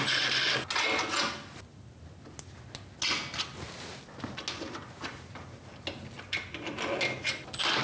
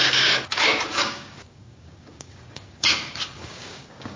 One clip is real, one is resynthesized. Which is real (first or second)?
first